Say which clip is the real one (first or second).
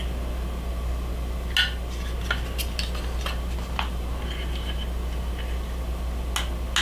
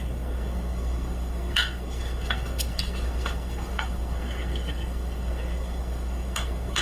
first